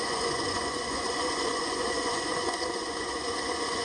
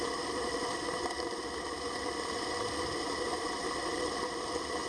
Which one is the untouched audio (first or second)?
second